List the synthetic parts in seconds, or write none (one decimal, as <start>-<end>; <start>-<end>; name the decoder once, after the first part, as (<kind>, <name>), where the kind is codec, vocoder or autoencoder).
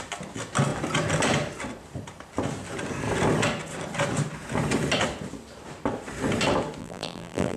6.8-7.6 (vocoder, BigVGAN v2)